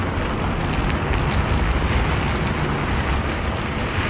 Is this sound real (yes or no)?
yes